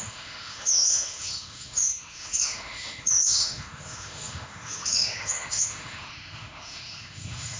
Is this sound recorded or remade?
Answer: remade